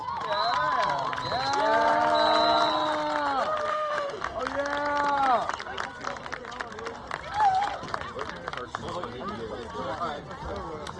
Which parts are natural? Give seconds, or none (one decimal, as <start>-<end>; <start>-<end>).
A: 0.0-3.7; 4.4-11.0